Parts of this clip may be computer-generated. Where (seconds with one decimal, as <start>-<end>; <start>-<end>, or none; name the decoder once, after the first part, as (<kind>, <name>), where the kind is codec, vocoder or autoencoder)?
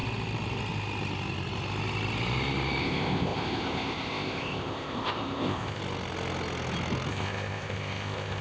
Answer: 2.8-5.8 (codec, ZipCodec); 7.1-8.4